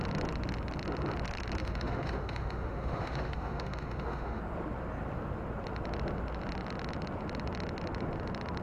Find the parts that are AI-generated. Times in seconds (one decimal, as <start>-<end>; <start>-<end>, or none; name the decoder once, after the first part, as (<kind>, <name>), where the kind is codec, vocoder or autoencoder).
1.6-4.4 (autoencoder, DAC-VAE)